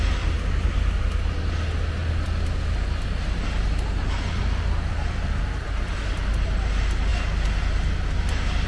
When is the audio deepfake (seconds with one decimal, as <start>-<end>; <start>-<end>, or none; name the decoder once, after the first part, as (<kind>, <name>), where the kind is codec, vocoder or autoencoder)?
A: none